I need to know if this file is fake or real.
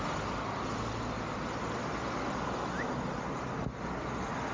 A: real